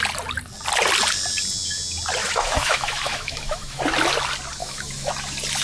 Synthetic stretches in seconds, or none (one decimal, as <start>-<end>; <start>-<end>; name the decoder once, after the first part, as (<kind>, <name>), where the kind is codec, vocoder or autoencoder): 2.2-3.8 (autoencoder, DAC-VAE); 4.6-5.1